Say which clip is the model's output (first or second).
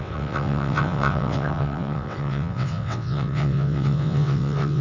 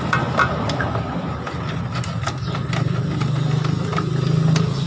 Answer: first